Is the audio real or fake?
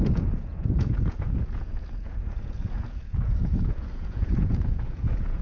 fake